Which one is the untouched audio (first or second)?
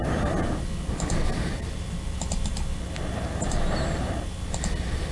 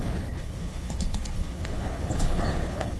first